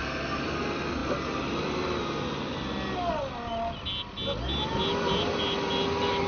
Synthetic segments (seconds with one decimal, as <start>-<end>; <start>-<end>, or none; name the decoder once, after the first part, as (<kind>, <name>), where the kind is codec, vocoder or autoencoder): none